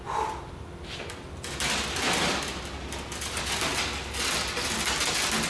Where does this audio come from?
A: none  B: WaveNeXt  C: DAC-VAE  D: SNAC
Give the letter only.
A